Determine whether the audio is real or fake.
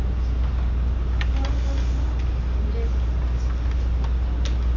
real